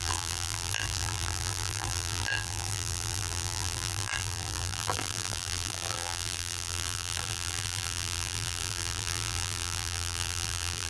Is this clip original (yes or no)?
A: no